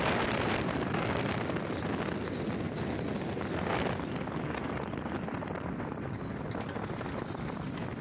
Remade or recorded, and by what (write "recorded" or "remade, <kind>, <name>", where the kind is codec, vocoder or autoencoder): recorded